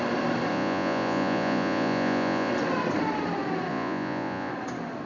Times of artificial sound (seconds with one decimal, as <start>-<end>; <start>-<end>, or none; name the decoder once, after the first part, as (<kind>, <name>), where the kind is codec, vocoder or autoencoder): 0.5-2.5 (vocoder, Vocos); 3.7-4.5